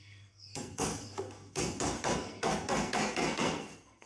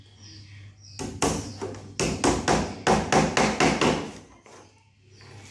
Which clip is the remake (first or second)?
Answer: first